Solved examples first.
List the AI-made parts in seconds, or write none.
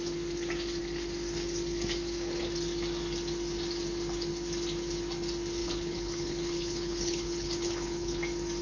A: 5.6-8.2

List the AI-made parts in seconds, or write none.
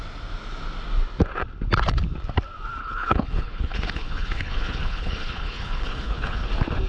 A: 2.8-6.5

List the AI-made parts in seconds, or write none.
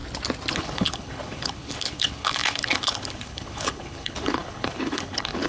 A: 0.5-5.5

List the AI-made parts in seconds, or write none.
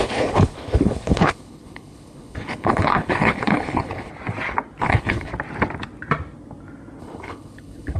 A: 0.0-4.1; 4.8-5.3; 7.0-8.0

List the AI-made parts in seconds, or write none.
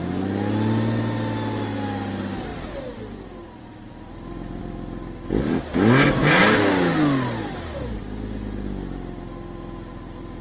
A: none